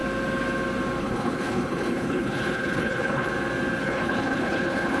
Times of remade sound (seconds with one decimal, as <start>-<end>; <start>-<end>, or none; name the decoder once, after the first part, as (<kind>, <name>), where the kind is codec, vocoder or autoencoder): 1.0-3.3 (codec, HILCodec); 3.8-5.0